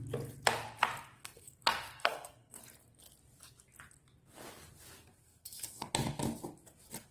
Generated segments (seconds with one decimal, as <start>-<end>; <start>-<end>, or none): 1.2-2.6; 5.2-5.9